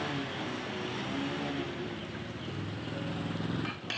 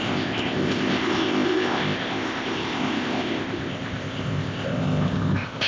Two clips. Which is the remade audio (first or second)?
second